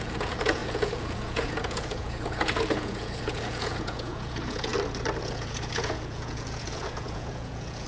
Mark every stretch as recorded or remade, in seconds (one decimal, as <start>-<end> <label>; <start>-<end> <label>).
0.0-4.7 remade; 4.7-5.2 recorded; 5.2-7.9 remade